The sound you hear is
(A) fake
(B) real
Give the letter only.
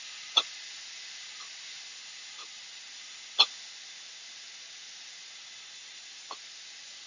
B